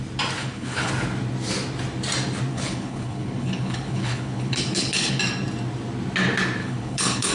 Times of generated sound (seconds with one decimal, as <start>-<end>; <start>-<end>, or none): 0.4-0.9; 2.5-5.2; 6.6-7.3